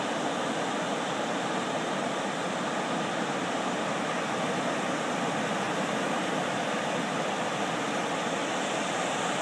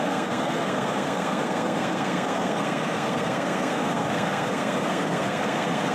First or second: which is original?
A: first